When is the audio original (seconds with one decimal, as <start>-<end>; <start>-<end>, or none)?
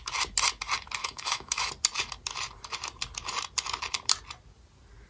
0.0-1.0; 1.7-5.1